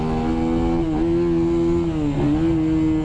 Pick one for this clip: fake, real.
real